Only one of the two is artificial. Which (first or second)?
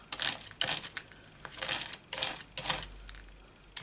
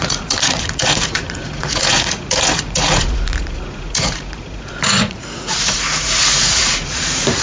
second